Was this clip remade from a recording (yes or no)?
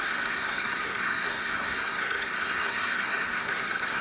yes